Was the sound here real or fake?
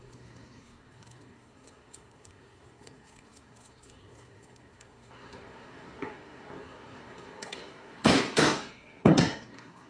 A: fake